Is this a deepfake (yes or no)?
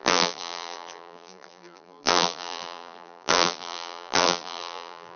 yes